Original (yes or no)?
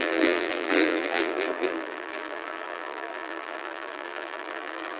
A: no